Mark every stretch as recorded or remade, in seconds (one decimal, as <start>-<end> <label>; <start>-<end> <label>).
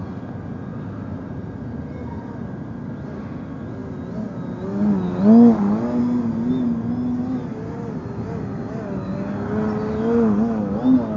0.0-11.2 recorded